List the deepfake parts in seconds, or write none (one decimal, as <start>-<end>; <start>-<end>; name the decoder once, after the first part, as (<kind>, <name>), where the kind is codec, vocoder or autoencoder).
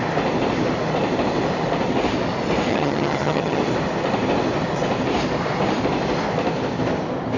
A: 2.7-3.6 (vocoder, HiFi-GAN)